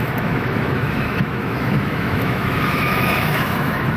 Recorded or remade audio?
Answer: remade